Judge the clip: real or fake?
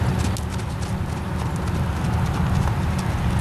real